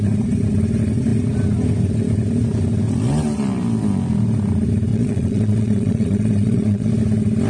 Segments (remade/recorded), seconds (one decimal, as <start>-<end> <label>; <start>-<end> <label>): 0.0-4.9 recorded; 4.9-6.9 remade; 6.9-7.5 recorded